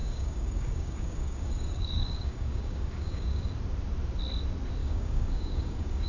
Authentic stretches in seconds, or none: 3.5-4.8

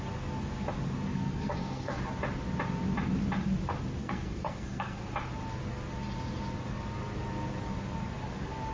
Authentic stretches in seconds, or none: 0.0-1.1; 2.0-4.0; 5.0-8.7

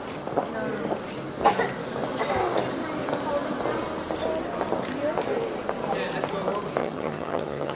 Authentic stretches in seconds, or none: 0.0-6.8

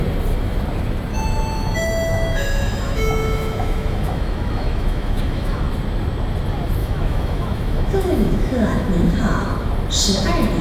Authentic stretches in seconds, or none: 0.0-1.1; 5.7-6.8; 9.7-10.6

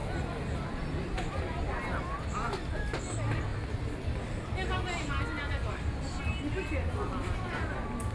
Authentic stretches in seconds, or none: 0.0-8.1